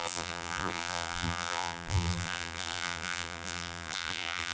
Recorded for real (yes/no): no